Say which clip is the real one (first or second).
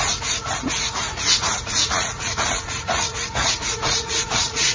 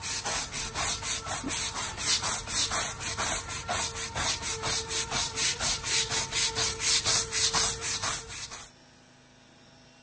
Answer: second